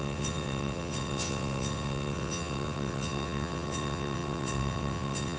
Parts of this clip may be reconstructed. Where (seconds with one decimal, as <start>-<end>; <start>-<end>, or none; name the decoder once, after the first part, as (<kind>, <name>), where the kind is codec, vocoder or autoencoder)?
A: 0.0-5.4 (vocoder, WaveNeXt)